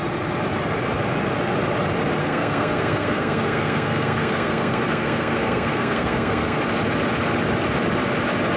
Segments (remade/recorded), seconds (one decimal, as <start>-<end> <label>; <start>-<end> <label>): 0.0-2.2 recorded; 2.2-6.6 remade; 6.6-8.6 recorded